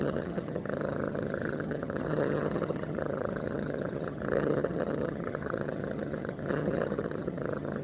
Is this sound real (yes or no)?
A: no